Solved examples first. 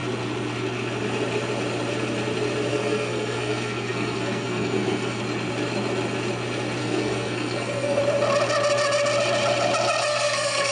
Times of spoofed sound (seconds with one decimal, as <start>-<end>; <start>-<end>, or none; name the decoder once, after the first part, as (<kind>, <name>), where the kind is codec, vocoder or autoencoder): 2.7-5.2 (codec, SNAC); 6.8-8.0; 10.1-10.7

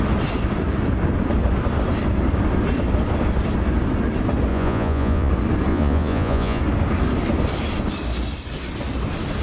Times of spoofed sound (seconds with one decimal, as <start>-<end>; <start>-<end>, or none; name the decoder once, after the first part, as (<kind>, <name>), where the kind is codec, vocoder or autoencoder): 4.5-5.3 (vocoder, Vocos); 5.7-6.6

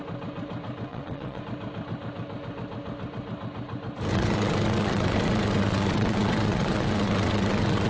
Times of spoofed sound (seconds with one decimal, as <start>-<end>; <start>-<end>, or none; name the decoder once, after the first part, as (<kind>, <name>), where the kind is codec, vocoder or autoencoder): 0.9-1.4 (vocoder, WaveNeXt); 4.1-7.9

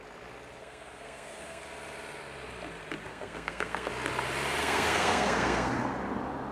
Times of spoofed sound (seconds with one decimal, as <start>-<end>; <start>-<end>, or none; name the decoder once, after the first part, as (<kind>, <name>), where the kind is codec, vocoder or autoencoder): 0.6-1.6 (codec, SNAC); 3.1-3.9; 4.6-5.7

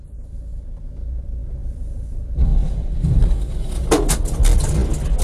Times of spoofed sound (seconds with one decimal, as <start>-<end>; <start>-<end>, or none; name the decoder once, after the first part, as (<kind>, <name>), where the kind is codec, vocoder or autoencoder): none

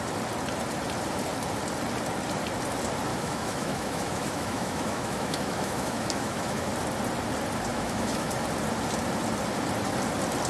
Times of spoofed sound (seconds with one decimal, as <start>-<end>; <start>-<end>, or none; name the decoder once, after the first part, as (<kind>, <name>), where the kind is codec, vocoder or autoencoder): 3.1-6.7 (autoencoder, DAC-VAE); 7.7-8.3

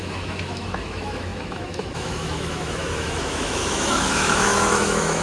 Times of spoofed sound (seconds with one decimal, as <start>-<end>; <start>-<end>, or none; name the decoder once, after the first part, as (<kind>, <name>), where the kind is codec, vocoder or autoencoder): 0.0-5.2 (autoencoder, DAC-VAE)

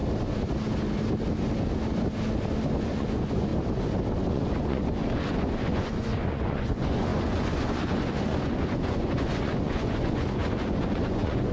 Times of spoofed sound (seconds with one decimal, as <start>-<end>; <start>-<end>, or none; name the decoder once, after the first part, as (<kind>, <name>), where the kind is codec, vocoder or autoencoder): 2.8-3.5 (vocoder, Vocos); 4.3-11.5